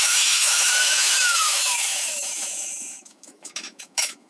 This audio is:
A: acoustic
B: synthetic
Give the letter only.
B